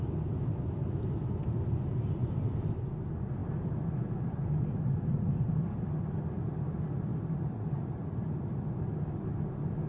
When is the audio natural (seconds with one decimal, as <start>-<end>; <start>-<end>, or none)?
0.0-2.2; 2.8-3.4; 6.2-7.1; 8.4-9.9